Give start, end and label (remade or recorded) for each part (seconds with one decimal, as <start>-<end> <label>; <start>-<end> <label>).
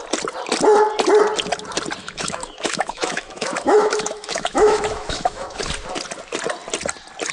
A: 0.0-2.0 recorded; 2.0-5.6 remade; 5.6-7.3 recorded